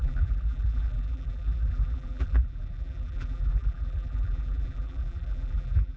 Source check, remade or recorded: remade